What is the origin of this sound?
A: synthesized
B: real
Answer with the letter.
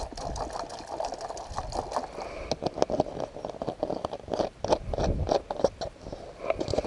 B